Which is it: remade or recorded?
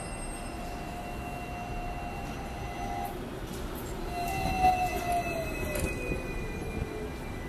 recorded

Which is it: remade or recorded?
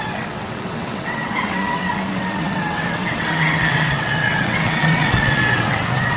remade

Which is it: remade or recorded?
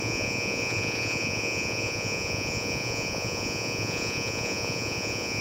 remade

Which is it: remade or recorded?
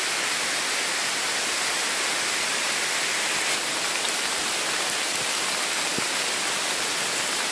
recorded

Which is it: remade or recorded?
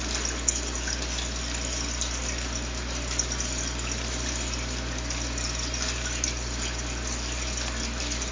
recorded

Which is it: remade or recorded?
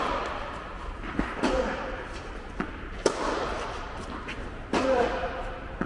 recorded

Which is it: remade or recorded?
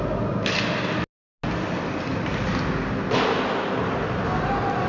recorded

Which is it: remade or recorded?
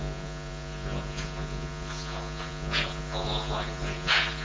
remade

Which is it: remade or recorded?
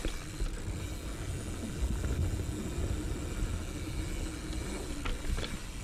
recorded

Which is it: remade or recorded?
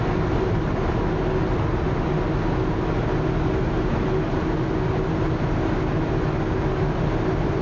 recorded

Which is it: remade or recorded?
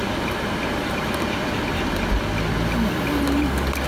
recorded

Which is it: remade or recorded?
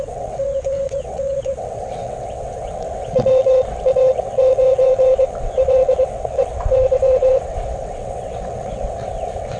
remade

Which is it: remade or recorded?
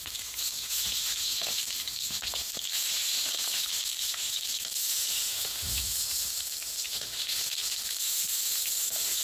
remade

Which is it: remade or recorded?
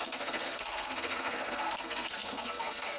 remade